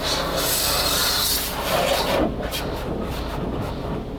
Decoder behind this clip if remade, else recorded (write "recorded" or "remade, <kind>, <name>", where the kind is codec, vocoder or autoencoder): recorded